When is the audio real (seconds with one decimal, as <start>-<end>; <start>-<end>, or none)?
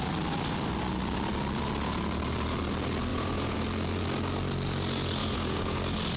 0.0-3.1; 3.6-5.2; 5.8-6.2